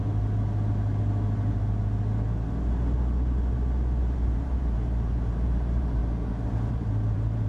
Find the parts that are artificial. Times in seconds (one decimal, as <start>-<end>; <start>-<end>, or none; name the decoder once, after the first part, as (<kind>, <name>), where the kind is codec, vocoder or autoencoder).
4.0-6.0 (vocoder, BigVGAN v2); 6.7-7.5